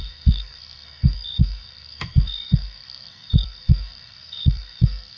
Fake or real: fake